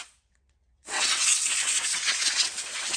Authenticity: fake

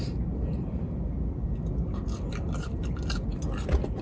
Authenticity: real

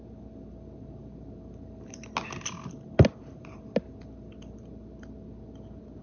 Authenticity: real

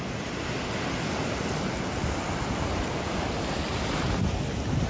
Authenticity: real